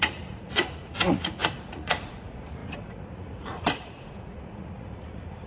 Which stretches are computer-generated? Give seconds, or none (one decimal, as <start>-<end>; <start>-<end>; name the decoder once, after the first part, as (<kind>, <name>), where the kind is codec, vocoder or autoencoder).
0.0-5.5 (vocoder, Vocos)